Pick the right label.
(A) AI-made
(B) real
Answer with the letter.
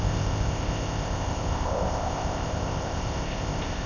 A